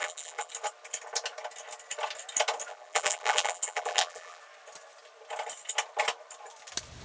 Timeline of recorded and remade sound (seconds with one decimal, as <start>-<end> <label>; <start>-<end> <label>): 0.0-0.5 remade; 0.5-2.7 recorded; 2.7-4.4 remade; 4.4-7.0 recorded